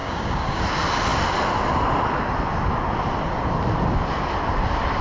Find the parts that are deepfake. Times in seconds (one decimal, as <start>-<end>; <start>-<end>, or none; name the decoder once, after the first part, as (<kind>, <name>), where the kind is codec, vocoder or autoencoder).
0.0-0.6 (codec, DAC)